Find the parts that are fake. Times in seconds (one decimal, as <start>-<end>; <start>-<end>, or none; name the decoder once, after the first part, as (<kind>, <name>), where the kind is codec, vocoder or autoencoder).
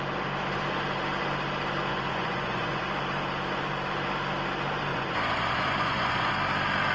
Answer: 1.9-2.8 (vocoder, Vocos); 4.9-6.3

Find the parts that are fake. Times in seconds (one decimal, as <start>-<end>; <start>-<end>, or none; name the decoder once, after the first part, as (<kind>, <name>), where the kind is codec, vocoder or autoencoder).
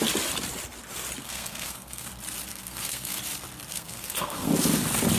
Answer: 1.2-2.1 (codec, SNAC); 2.5-3.2; 3.7-4.5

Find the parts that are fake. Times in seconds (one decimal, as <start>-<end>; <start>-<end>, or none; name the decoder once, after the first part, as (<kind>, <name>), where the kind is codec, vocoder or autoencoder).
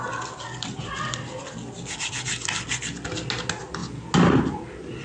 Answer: none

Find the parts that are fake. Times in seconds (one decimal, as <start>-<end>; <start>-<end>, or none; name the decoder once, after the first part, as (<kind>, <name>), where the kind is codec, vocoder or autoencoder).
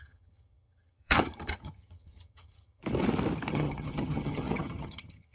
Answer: 0.0-2.8 (vocoder, HiFi-GAN); 3.5-5.3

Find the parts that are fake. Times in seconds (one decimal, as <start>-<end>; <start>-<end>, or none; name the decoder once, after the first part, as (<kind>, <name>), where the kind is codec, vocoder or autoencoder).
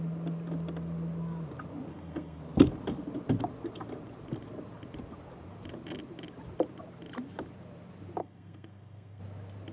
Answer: 1.9-2.4 (codec, SNAC); 8.2-9.2